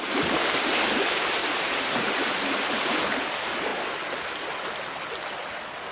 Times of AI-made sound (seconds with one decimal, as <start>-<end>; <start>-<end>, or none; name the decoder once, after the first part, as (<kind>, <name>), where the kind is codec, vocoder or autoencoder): 1.4-2.8 (vocoder, BigVGAN v2)